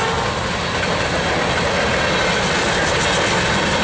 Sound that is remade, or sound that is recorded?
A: recorded